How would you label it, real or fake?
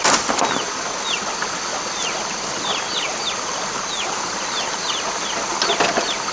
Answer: real